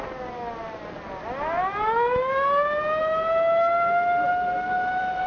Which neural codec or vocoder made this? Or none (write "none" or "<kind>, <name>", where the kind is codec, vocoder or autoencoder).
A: none